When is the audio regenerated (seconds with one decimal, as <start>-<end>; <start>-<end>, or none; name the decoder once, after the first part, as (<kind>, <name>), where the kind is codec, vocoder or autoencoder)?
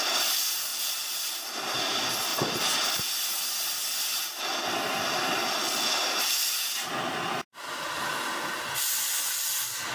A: none